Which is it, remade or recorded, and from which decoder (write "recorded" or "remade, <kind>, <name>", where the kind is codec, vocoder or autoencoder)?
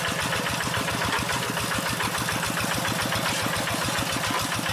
recorded